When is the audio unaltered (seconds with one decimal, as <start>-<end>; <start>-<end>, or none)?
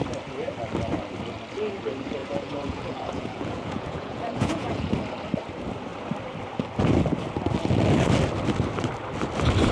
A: 0.0-2.2; 4.9-9.7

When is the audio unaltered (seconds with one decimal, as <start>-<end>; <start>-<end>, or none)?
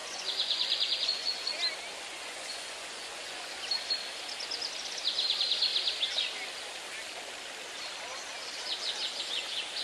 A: 1.5-2.1; 3.6-9.8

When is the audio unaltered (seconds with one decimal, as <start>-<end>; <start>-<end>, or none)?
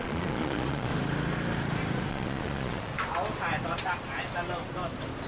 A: 0.9-2.1; 2.9-5.3